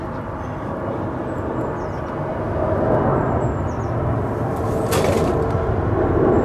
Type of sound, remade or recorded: recorded